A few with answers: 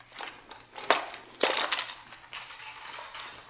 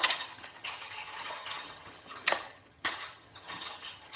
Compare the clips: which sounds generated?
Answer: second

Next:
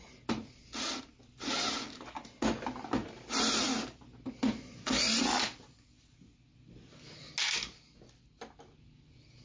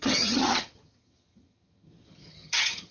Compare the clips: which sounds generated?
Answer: second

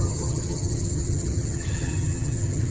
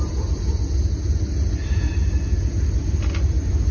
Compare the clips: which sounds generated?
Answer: first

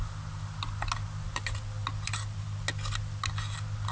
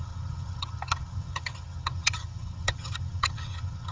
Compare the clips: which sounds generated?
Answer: second